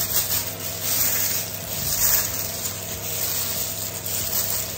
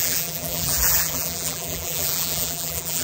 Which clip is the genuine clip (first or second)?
first